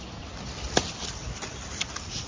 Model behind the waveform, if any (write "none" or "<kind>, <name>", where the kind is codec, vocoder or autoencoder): none